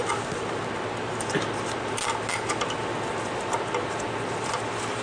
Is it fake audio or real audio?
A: real